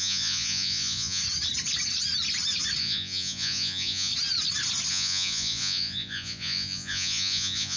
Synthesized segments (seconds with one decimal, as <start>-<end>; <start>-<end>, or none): 0.0-1.2; 2.8-4.1; 4.9-7.8